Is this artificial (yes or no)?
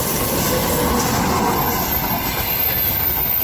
no